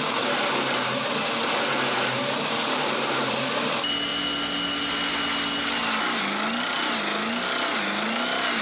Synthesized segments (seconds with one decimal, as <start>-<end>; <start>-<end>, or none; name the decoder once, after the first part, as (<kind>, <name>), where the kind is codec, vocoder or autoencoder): none